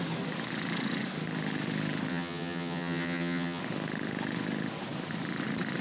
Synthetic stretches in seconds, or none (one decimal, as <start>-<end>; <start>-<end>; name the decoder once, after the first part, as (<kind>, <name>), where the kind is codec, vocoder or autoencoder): 2.1-3.6 (vocoder, HiFi-GAN)